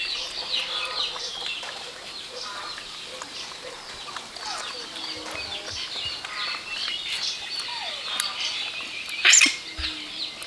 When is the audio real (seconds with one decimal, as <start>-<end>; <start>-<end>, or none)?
0.0-10.5